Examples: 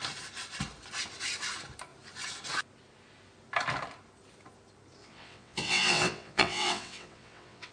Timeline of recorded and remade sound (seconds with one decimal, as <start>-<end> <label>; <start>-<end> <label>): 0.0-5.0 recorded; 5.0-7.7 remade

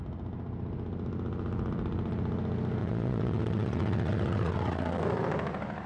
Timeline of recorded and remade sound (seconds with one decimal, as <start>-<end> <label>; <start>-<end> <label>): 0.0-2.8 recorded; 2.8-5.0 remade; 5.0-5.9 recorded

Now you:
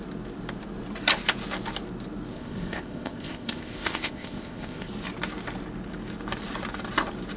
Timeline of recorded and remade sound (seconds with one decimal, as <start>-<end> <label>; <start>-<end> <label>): 0.0-2.3 recorded; 2.3-4.9 remade; 4.9-7.4 recorded

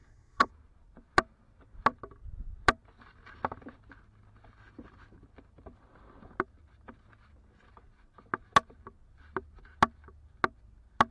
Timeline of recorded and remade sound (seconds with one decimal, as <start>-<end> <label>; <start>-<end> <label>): 0.0-0.5 remade; 0.5-11.1 recorded

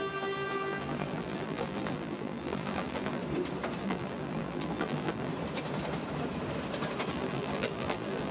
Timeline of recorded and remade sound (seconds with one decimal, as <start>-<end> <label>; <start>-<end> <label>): 0.0-3.2 remade; 3.2-3.8 recorded; 3.8-5.3 remade; 5.3-7.1 recorded; 7.1-8.3 remade

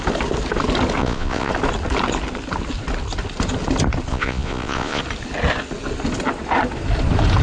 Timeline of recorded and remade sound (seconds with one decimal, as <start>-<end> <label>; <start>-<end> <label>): 0.0-1.0 recorded; 1.0-1.5 remade; 1.5-4.1 recorded; 4.1-5.0 remade; 5.0-7.4 recorded

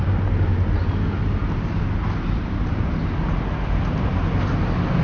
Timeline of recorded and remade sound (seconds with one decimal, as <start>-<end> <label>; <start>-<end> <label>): 0.0-5.0 recorded

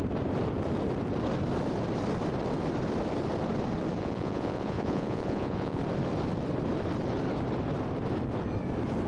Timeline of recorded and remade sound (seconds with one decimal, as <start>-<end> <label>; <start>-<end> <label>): 0.0-4.0 recorded; 4.0-5.8 remade; 5.8-9.1 recorded